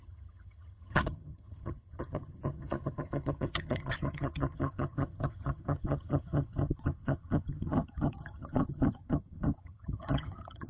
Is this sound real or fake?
fake